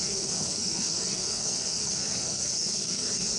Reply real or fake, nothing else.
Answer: fake